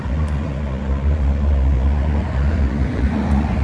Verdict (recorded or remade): remade